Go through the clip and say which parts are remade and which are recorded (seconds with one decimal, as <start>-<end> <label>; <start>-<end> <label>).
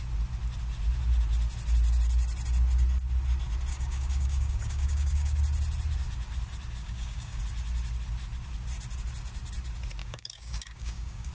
0.0-3.7 recorded; 3.7-5.4 remade; 5.4-6.8 recorded; 6.8-7.4 remade; 7.4-10.0 recorded; 10.0-11.3 remade